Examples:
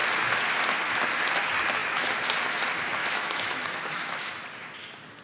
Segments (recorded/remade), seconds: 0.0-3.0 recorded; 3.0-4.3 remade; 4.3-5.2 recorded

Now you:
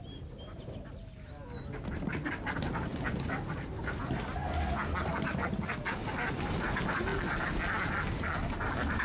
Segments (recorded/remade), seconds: 0.0-9.0 recorded

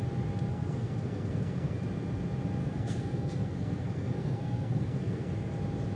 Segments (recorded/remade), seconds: 0.0-0.5 recorded; 0.5-1.8 remade; 1.8-2.6 recorded; 2.6-5.5 remade; 5.5-6.0 recorded

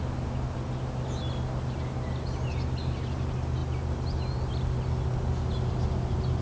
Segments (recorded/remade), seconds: 0.0-6.4 recorded

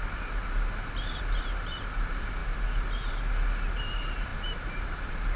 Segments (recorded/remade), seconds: 0.0-5.4 recorded

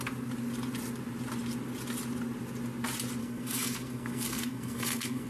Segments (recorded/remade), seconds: 0.0-3.2 recorded; 3.2-5.3 remade

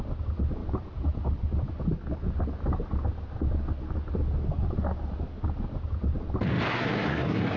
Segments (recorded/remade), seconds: 0.0-6.7 recorded; 6.7-7.6 remade

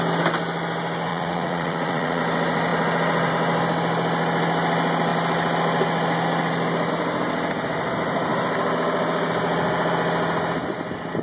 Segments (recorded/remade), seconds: 0.0-1.1 recorded; 1.1-2.2 remade; 2.2-11.2 recorded